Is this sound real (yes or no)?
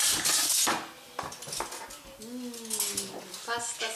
yes